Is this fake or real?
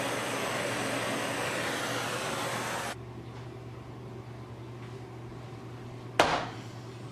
real